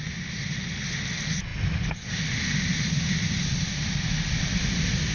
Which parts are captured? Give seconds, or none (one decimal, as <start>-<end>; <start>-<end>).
0.0-5.1